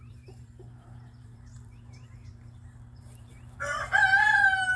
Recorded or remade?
remade